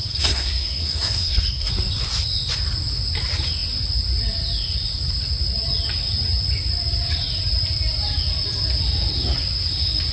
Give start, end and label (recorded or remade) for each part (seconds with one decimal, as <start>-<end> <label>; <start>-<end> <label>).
0.0-1.7 remade; 1.7-10.1 recorded